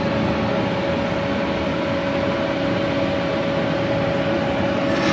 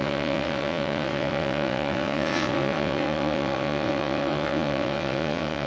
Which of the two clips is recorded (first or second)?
first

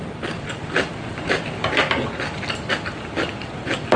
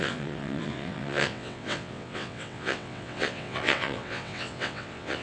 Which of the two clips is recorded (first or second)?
first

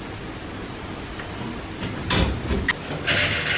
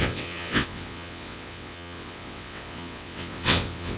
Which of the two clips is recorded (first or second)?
first